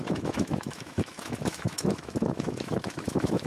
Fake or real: fake